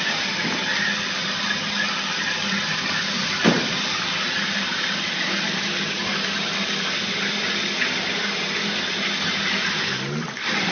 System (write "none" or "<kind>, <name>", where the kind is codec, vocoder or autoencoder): none